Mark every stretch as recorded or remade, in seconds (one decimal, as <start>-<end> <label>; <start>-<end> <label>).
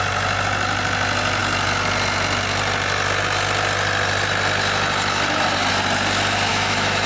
0.0-6.5 recorded; 6.5-7.1 remade